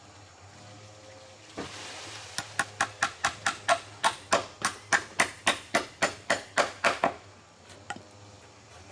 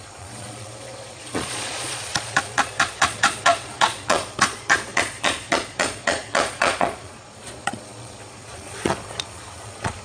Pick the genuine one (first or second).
first